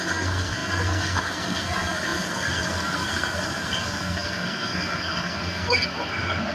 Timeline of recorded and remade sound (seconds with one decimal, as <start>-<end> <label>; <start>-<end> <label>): 0.0-6.5 remade